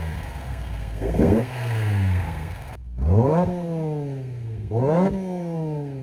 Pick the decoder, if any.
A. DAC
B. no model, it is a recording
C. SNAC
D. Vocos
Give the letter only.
C